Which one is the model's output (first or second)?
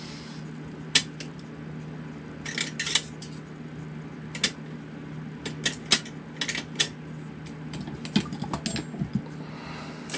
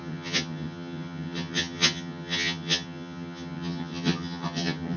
second